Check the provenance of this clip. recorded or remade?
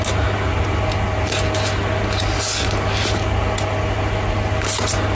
recorded